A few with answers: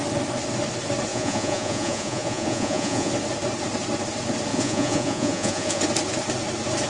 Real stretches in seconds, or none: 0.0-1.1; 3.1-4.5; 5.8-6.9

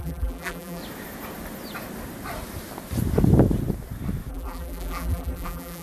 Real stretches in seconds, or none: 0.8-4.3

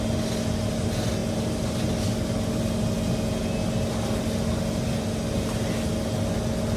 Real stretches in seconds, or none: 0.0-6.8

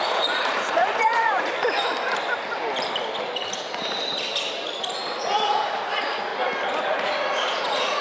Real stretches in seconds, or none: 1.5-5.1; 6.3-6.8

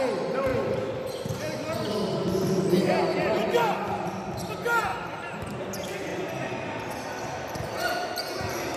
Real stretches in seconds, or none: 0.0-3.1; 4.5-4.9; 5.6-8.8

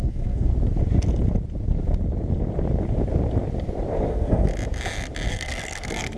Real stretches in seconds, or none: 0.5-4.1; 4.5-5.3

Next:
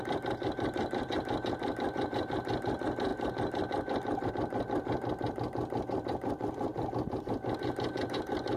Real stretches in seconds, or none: 0.0-8.6